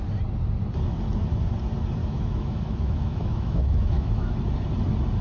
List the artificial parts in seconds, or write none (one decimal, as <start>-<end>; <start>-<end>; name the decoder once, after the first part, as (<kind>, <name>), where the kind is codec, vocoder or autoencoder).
2.0-4.3 (autoencoder, DAC-VAE)